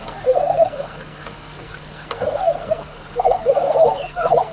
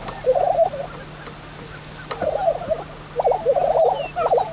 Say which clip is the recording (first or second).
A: second